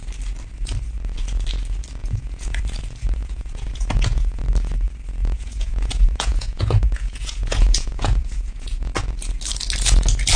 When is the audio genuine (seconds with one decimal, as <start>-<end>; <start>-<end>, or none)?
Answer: 0.0-2.0; 2.6-3.2; 4.4-5.2; 8.9-10.4